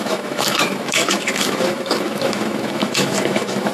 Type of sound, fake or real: fake